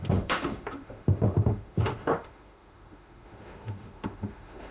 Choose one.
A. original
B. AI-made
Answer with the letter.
B